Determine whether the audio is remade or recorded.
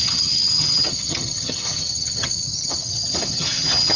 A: remade